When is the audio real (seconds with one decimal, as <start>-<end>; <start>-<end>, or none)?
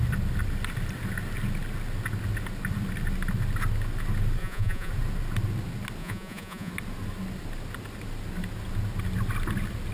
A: 0.0-4.4; 4.9-6.0; 6.7-9.9